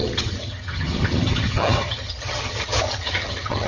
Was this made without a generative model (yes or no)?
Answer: no